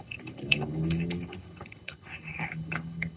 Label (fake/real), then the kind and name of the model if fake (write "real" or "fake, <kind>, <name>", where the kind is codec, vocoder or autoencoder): fake, codec, HILCodec